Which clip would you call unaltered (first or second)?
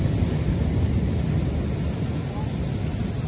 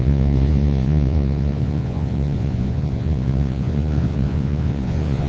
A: first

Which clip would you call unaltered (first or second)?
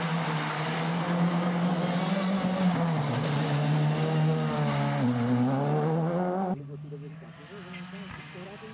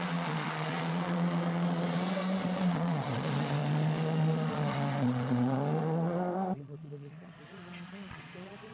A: first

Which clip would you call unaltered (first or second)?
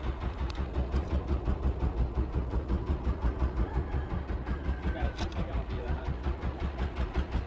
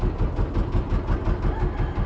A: second